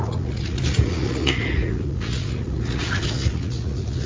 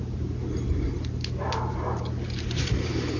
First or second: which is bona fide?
second